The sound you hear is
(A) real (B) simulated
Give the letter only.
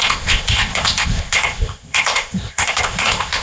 B